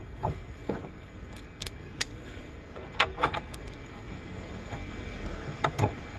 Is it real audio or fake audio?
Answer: fake